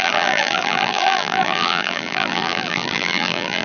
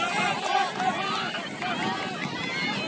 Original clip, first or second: second